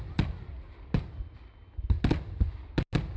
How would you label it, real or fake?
real